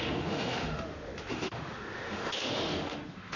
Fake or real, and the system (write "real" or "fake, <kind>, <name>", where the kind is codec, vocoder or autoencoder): fake, autoencoder, DAC-VAE